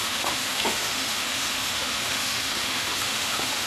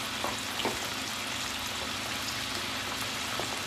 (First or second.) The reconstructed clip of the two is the first